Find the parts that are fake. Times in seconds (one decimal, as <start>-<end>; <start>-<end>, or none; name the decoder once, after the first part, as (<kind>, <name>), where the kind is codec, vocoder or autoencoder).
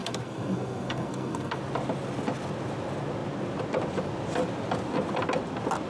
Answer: 0.0-1.6 (codec, SNAC)